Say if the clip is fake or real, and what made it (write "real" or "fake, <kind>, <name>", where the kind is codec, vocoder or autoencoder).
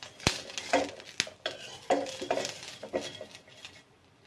real